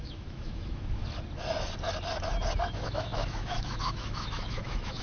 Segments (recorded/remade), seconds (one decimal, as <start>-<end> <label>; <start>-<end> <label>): 0.0-1.0 remade; 1.0-2.7 recorded; 2.7-5.0 remade